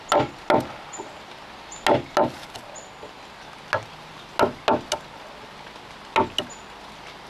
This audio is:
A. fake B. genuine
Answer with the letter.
B